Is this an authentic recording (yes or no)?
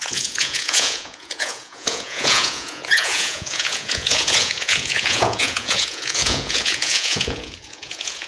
no